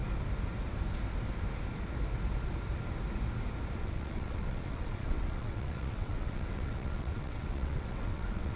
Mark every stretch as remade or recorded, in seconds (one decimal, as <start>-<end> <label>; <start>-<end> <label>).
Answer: 0.0-3.8 recorded; 3.8-8.6 remade